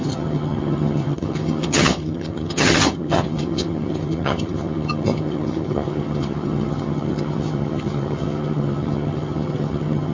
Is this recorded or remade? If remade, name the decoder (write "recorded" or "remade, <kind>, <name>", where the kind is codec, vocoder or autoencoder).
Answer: remade, vocoder, HiFi-GAN